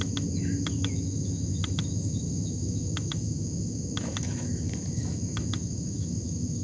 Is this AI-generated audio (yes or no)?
yes